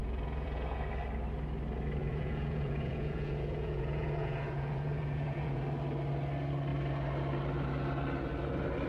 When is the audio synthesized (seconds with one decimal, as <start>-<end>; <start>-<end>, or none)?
0.0-0.9; 2.0-5.6